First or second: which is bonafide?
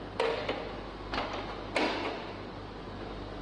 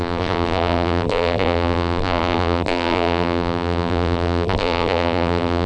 first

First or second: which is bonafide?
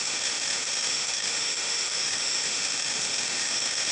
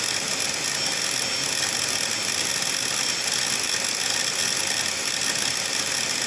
second